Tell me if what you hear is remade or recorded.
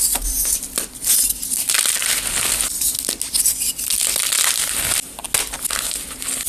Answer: recorded